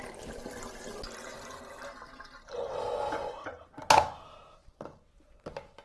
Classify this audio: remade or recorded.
recorded